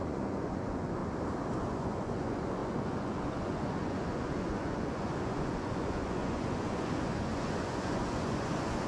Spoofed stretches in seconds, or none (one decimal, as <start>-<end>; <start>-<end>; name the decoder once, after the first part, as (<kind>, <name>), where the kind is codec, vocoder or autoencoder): 0.0-1.0 (vocoder, Vocos); 1.6-8.9